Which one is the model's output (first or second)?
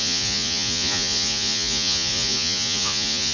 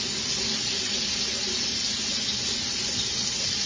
first